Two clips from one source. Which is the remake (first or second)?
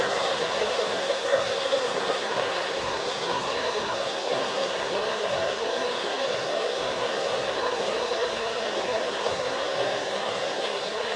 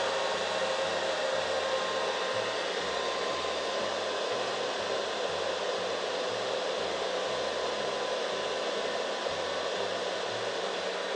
first